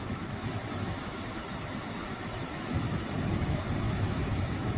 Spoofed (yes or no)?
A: yes